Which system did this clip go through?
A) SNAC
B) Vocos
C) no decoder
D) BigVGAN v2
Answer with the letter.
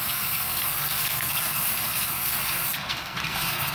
A